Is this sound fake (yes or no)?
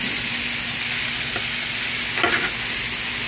no